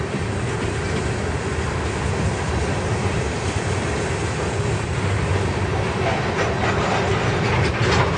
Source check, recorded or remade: recorded